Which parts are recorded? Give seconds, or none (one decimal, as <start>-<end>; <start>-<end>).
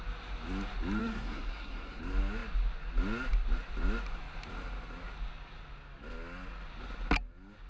0.0-1.0; 2.0-7.7